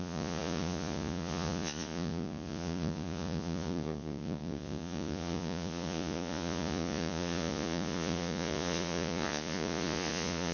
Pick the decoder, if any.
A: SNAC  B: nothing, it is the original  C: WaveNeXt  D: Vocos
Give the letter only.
D